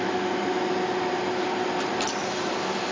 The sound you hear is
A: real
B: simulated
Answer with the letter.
A